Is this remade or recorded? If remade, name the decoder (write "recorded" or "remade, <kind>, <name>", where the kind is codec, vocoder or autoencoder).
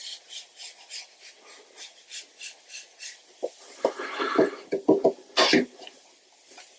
recorded